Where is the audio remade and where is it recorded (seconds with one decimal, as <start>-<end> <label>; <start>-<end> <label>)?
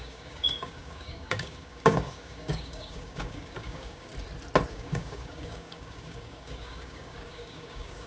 0.0-4.1 remade; 4.1-4.7 recorded; 4.7-8.1 remade